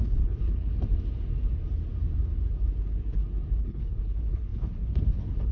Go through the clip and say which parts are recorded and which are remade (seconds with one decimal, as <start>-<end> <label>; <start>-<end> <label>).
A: 0.0-0.7 remade; 0.7-3.6 recorded; 3.6-5.5 remade